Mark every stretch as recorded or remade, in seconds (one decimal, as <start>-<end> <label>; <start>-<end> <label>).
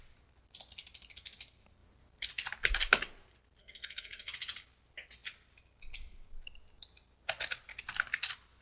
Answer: 0.0-3.6 recorded; 3.6-4.3 remade; 4.3-8.6 recorded